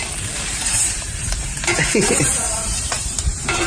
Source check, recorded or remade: remade